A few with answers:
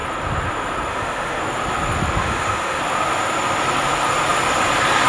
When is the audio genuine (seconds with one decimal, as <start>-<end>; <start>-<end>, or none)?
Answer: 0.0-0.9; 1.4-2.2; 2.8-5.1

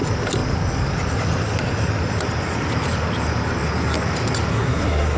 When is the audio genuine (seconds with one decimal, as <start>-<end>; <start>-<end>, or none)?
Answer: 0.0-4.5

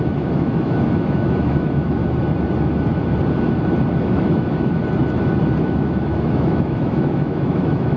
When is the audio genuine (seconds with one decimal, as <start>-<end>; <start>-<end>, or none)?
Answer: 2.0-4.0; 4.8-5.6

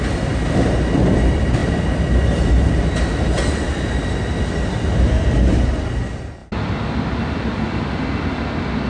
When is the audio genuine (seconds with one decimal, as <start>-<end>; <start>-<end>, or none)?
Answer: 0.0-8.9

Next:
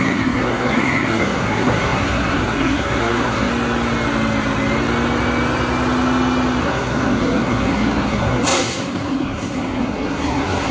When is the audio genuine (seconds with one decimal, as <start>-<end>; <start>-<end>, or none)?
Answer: 3.5-6.6

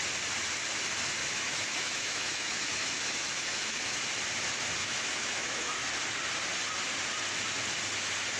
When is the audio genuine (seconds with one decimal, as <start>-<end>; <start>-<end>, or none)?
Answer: 0.0-1.2; 4.0-4.8; 5.8-8.4

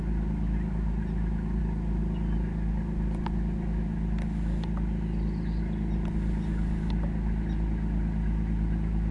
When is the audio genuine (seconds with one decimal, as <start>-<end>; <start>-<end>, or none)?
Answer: 0.0-9.1